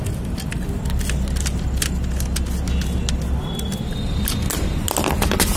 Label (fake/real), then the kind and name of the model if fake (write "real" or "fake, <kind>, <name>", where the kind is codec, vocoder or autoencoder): real